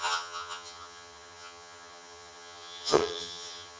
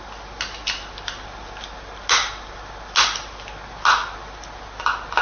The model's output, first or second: first